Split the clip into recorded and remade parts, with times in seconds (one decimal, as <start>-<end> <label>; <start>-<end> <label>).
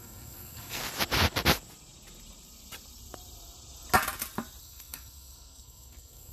0.0-0.8 remade; 0.8-4.6 recorded; 4.6-6.3 remade